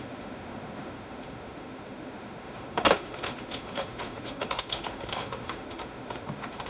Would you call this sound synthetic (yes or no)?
yes